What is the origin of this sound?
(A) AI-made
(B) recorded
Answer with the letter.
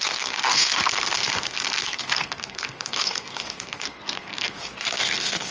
A